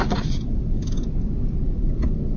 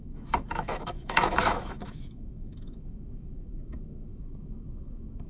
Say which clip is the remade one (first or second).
second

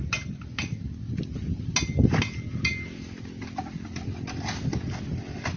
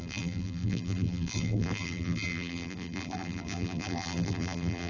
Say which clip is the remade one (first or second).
second